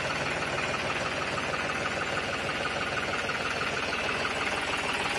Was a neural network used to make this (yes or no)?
yes